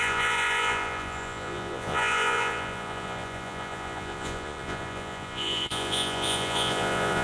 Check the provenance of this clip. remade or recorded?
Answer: remade